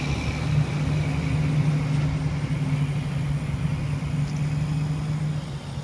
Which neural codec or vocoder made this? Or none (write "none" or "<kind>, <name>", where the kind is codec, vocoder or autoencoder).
none